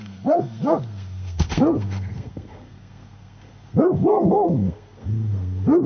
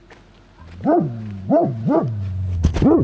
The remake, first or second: first